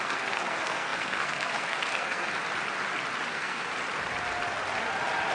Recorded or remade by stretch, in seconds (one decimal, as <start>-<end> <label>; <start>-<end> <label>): 0.0-2.4 remade; 2.4-3.3 recorded; 3.3-3.7 remade; 3.7-5.3 recorded